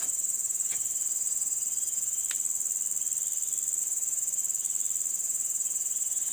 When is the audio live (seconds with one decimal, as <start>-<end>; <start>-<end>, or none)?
2.2-3.8; 4.4-5.1